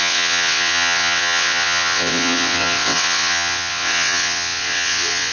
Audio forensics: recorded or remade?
remade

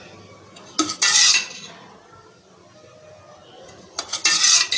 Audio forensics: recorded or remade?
recorded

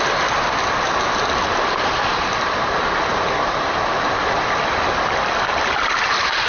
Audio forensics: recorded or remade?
recorded